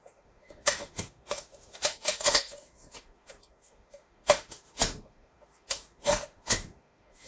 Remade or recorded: remade